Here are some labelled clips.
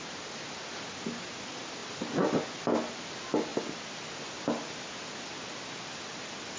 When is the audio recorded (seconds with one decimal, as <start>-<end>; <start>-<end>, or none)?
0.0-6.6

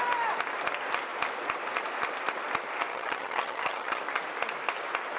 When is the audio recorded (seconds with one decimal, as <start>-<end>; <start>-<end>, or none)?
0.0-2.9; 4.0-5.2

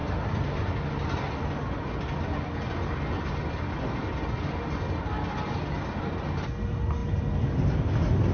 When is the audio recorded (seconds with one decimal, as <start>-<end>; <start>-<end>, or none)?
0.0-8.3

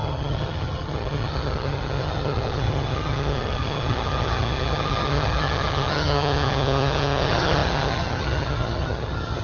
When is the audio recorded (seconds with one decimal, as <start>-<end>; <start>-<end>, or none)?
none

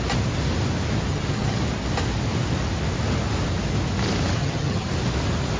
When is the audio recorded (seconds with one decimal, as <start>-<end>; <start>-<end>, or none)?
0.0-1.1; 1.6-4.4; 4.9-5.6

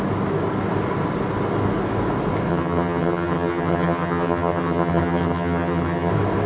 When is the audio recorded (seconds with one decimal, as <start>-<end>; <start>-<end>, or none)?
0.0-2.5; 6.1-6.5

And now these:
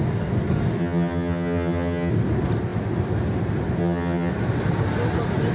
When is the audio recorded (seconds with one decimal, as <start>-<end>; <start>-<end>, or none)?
0.0-0.8; 2.1-3.8; 4.3-5.5

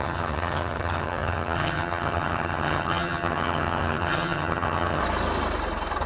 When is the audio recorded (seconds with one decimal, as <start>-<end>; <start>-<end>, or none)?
5.0-6.1